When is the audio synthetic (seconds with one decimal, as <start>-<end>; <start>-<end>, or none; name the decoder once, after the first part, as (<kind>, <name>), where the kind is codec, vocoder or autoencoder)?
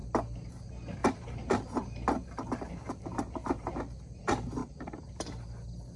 1.0-3.8 (vocoder, BigVGAN v2); 4.6-5.1